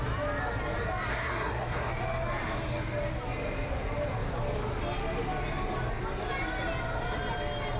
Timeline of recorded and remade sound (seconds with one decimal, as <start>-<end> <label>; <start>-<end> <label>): 0.0-1.1 recorded; 1.1-1.9 remade; 1.9-7.8 recorded